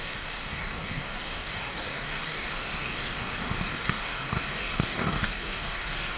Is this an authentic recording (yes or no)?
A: no